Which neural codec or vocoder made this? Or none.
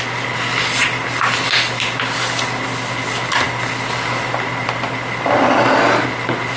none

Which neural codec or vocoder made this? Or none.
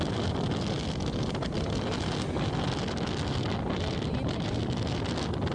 none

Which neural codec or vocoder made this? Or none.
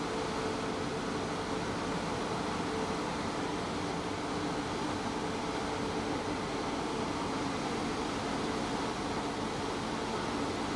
none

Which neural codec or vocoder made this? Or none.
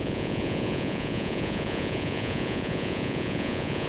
vocoder, Vocos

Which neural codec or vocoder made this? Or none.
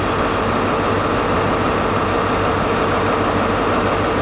none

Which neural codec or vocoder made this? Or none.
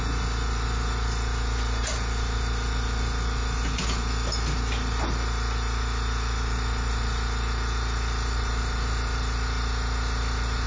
none